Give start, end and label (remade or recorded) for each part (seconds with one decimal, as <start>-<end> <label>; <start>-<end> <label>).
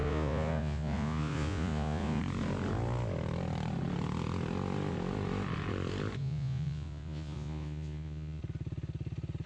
0.0-2.2 remade; 2.2-6.2 recorded; 6.2-8.4 remade; 8.4-9.5 recorded